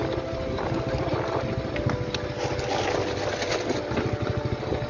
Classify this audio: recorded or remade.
recorded